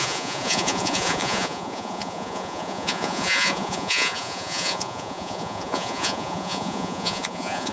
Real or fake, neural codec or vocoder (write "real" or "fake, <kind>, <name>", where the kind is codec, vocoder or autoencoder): fake, vocoder, Vocos